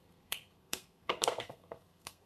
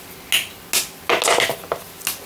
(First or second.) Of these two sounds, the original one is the second